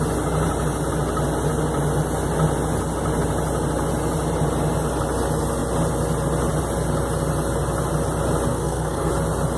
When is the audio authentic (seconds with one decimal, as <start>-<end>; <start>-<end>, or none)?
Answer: 0.0-8.5; 9.1-9.6